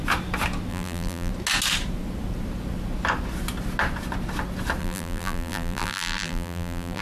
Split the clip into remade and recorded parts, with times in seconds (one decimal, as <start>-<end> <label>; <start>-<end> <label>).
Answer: 0.0-0.7 recorded; 0.7-1.3 remade; 1.3-4.8 recorded; 4.8-7.0 remade